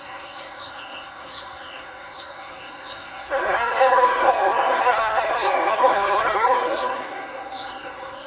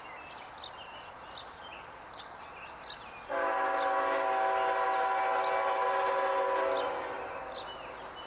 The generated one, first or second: first